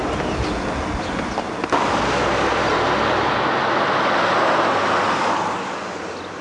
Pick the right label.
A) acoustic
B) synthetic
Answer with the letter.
A